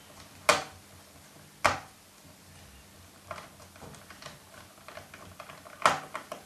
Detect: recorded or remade recorded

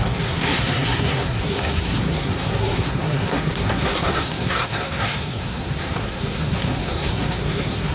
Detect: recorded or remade remade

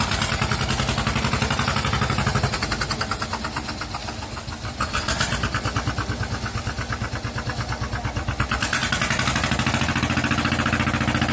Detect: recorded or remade recorded